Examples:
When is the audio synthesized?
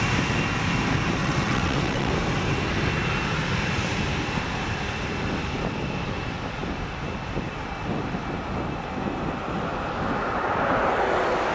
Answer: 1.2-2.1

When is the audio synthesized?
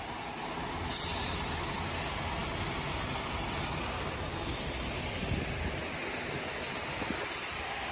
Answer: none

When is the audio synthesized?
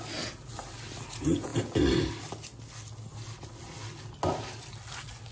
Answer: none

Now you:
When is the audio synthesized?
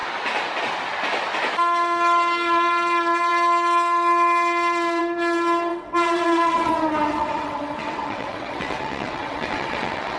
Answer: 5.7-10.2